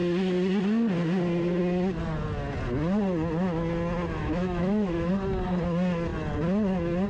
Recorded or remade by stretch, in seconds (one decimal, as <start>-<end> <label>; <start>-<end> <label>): 0.0-4.2 recorded; 4.2-5.1 remade; 5.1-7.1 recorded